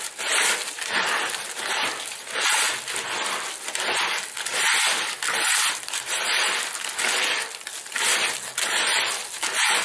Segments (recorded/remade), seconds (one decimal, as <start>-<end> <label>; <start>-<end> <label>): 0.0-4.5 recorded; 4.5-5.6 remade; 5.6-9.8 recorded